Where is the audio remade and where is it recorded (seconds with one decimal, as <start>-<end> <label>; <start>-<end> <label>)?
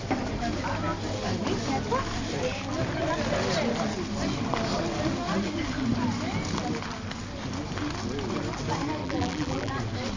0.0-9.0 recorded; 9.0-9.7 remade; 9.7-10.2 recorded